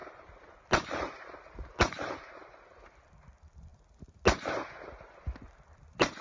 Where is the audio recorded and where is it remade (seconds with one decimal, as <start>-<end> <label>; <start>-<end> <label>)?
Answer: 0.0-3.7 remade; 3.7-5.2 recorded; 5.2-6.2 remade